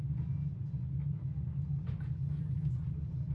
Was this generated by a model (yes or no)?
no